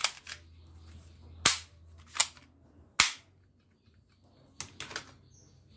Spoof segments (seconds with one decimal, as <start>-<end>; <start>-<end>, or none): none